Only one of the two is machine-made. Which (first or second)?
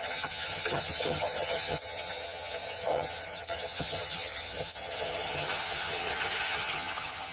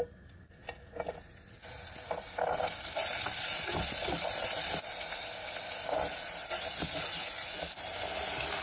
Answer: first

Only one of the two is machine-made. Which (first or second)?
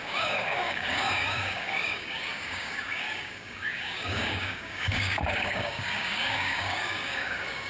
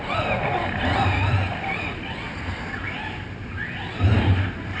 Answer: first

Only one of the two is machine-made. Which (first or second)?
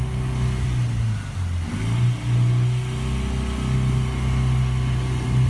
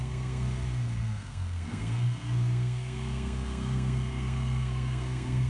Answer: second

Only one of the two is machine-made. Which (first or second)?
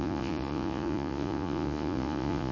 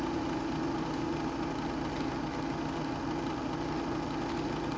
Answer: first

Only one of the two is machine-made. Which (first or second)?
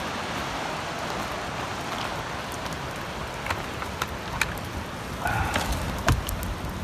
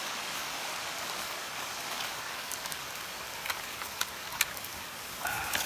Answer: second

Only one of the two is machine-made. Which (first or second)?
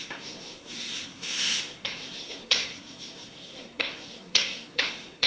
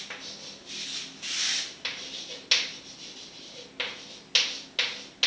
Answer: first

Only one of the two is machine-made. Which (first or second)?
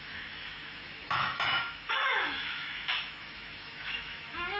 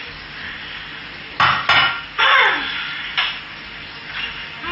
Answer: first